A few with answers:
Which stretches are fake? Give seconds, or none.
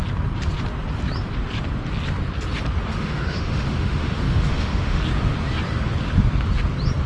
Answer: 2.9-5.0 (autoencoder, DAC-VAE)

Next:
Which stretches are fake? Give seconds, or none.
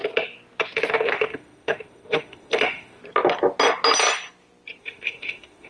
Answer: 0.9-3.0 (autoencoder, DAC-VAE); 4.8-5.7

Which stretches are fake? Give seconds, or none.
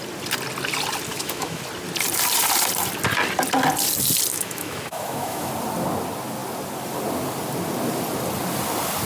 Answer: 1.1-1.6 (autoencoder, DAC-VAE); 4.3-5.5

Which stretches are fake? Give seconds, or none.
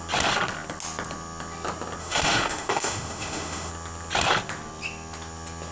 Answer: 2.0-3.7 (autoencoder, DAC-VAE)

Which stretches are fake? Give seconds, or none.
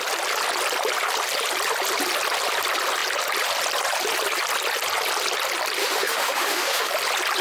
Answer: 5.8-6.9 (autoencoder, DAC-VAE)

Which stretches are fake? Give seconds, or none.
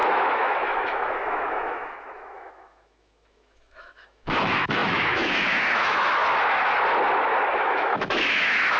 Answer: 0.0-6.2 (autoencoder, DAC-VAE); 7.6-8.8